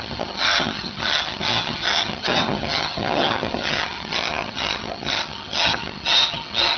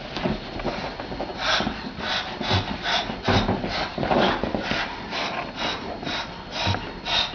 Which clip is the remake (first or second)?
first